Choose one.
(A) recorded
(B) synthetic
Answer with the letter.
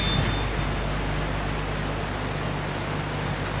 A